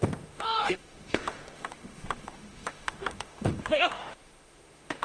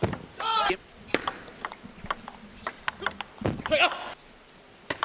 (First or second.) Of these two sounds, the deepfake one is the first